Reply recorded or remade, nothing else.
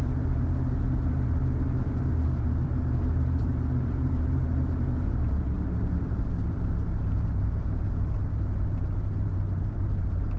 remade